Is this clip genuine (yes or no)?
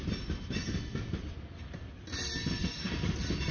yes